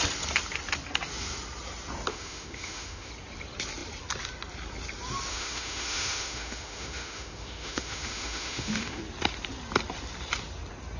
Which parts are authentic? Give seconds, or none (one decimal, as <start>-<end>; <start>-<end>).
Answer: 0.0-2.1; 3.1-5.3; 9.0-11.0